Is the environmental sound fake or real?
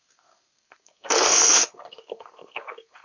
fake